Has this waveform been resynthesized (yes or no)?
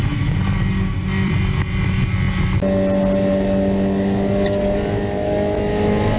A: no